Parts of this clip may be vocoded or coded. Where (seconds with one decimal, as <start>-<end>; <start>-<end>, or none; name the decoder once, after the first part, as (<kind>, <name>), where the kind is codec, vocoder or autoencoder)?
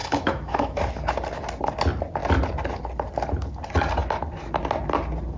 0.0-0.8 (autoencoder, DAC-VAE)